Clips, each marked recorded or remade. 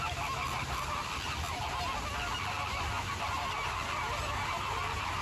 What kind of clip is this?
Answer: recorded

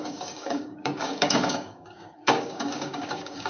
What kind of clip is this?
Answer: remade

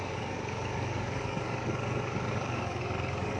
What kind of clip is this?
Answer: remade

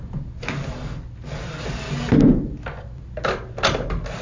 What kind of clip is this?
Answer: recorded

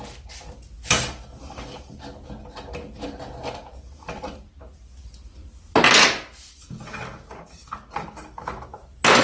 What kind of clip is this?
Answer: recorded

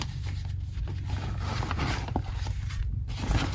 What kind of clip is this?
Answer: recorded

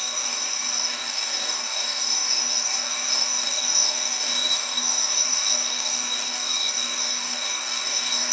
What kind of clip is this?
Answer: remade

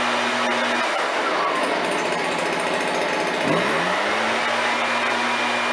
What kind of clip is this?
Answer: recorded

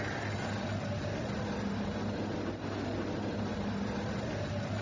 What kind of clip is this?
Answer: recorded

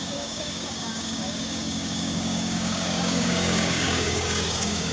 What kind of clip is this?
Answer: remade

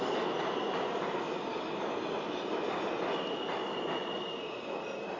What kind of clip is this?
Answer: recorded